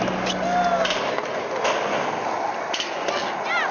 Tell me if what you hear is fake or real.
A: real